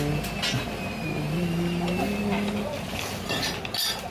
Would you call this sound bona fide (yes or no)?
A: yes